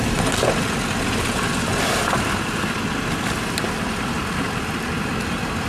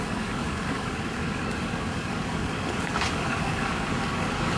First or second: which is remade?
second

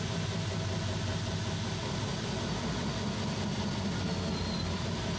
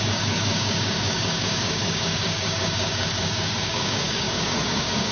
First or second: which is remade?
second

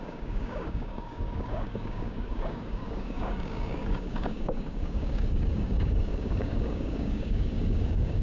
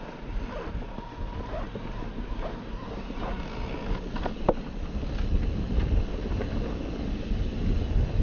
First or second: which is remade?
first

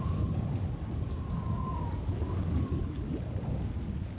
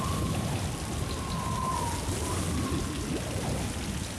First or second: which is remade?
first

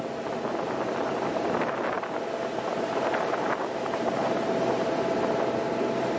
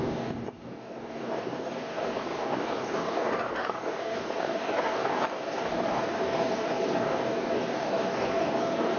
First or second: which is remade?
second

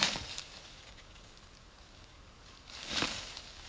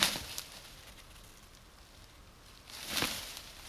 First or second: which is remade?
first